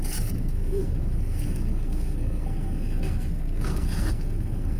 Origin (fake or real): fake